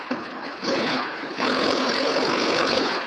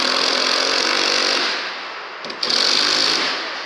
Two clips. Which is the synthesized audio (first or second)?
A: first